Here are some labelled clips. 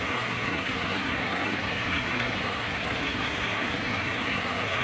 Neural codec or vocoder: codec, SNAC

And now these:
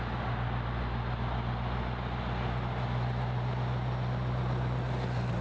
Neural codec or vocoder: none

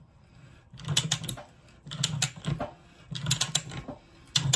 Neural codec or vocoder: none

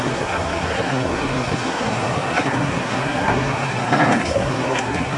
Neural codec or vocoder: codec, SNAC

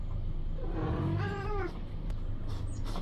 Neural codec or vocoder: vocoder, BigVGAN v2